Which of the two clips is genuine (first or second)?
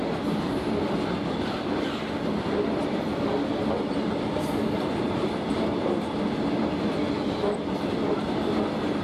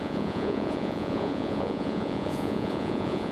first